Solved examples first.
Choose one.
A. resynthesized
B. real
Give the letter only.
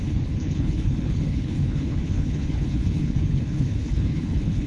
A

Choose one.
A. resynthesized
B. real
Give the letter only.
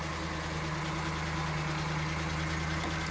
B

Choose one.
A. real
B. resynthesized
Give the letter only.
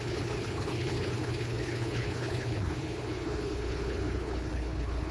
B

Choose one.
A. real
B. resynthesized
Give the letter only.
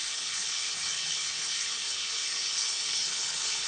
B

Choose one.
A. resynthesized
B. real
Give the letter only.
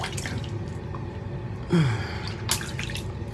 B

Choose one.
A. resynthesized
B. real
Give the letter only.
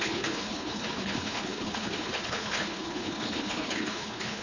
A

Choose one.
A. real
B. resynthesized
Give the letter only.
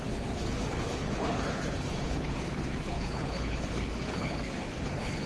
B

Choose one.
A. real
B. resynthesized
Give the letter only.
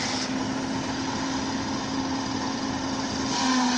A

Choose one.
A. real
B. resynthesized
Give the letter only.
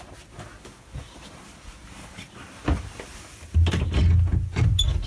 A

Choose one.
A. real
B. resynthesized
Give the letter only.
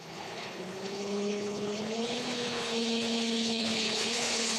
B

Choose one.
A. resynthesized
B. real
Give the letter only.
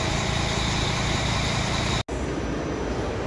B